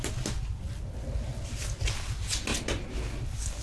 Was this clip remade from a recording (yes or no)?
no